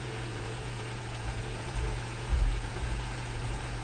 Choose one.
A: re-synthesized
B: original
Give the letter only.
A